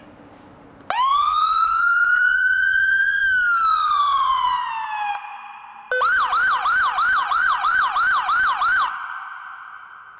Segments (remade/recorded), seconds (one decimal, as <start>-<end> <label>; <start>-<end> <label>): 0.0-1.1 recorded; 1.1-3.2 remade; 3.2-3.7 recorded; 3.7-4.7 remade; 4.7-7.2 recorded; 7.2-7.8 remade; 7.8-10.2 recorded